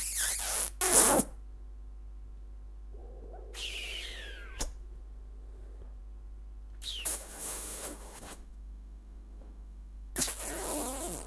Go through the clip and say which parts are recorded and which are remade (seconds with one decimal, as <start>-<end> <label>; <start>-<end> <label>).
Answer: 0.0-7.1 recorded; 7.1-10.1 remade; 10.1-11.3 recorded